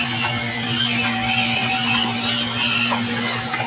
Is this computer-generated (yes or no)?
no